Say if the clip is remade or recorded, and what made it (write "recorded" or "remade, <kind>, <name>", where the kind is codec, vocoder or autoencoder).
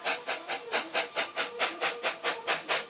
recorded